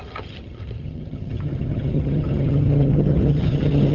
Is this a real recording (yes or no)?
no